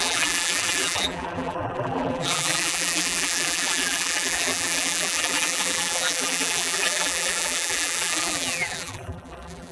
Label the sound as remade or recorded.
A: remade